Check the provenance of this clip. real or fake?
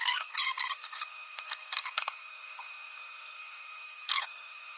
fake